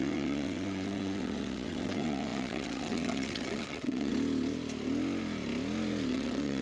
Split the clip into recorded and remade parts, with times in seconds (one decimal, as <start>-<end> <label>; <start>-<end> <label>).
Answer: 0.0-4.1 remade; 4.1-6.1 recorded; 6.1-6.6 remade